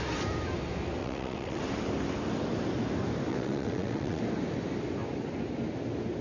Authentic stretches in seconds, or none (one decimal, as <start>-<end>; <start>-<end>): 0.0-1.0; 1.6-3.3; 4.2-6.2